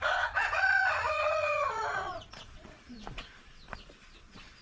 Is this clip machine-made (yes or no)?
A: yes